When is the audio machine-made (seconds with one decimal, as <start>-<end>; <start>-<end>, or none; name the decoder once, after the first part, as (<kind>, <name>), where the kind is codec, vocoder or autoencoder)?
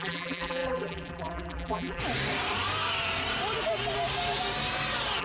0.0-2.0 (vocoder, BigVGAN v2)